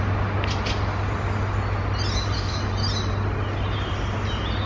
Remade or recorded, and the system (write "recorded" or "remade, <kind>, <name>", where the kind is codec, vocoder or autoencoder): recorded